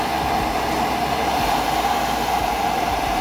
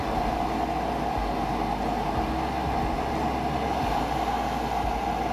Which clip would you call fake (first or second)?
first